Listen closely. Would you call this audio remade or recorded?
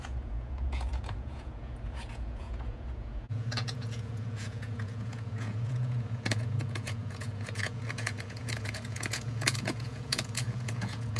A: remade